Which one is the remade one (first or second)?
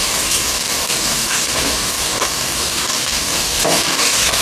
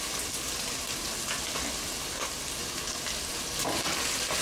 first